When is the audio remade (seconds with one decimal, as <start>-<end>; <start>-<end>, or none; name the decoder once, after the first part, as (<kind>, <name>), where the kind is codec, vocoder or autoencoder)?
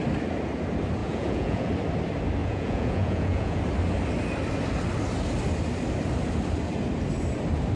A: 1.0-1.7 (vocoder, Vocos); 2.4-3.6